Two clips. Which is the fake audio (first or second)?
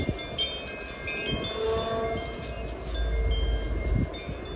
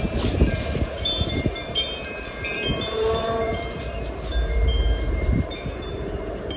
second